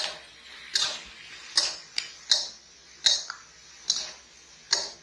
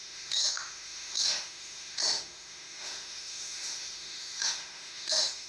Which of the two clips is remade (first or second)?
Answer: second